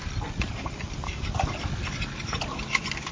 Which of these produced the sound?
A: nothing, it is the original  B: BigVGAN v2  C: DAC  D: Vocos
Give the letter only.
A